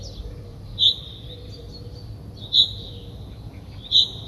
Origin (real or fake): real